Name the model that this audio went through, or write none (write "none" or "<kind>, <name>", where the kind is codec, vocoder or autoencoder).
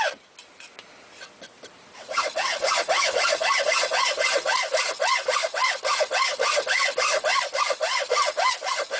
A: none